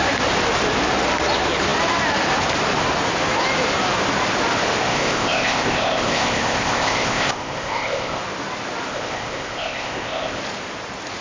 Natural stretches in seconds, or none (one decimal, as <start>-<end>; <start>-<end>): 0.0-4.9; 8.2-8.9; 10.4-11.2